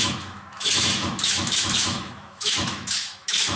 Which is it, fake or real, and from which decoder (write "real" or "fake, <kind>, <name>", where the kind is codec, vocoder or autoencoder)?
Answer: fake, autoencoder, DAC-VAE